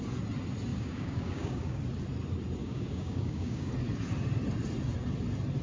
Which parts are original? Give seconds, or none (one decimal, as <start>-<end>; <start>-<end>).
0.0-0.7; 1.8-2.6; 3.7-5.6